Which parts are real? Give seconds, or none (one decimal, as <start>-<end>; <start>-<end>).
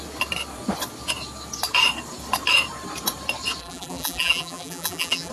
0.0-3.6